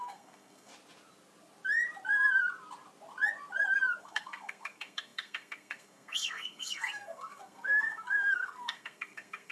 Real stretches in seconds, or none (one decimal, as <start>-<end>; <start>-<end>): 0.7-4.0